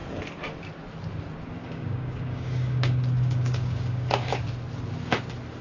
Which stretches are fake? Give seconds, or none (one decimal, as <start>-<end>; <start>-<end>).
1.6-4.3